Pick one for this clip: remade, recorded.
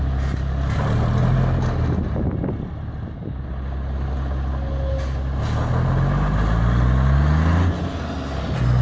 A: recorded